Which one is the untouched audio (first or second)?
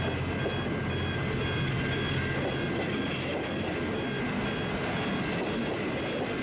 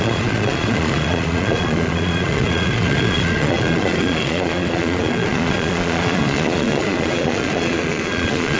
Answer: first